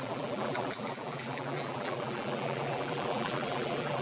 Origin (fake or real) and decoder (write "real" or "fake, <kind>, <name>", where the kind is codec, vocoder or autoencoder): fake, vocoder, BigVGAN v2